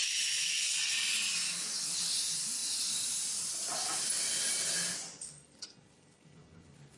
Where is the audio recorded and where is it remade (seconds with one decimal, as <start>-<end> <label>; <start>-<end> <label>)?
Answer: 0.0-7.0 recorded